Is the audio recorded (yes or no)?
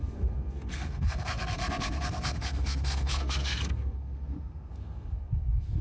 no